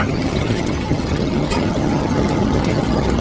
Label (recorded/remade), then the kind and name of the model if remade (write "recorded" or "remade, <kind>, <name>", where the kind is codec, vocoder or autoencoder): remade, vocoder, HiFi-GAN